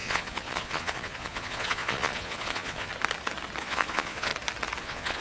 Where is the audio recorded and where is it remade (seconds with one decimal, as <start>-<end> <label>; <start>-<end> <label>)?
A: 0.0-2.9 remade; 2.9-3.6 recorded; 3.6-4.3 remade; 4.3-4.8 recorded; 4.8-5.2 remade